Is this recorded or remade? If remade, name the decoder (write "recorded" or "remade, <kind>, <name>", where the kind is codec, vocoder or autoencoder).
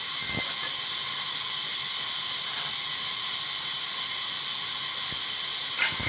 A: recorded